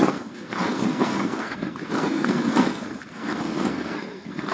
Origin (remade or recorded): remade